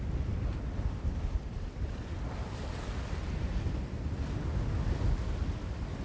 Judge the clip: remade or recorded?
recorded